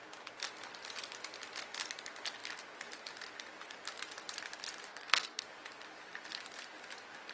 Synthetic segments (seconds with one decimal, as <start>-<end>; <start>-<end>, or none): 4.9-5.4